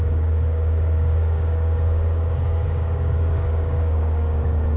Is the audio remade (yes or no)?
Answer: yes